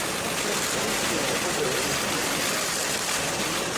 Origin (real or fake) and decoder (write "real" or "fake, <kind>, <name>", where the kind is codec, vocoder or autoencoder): real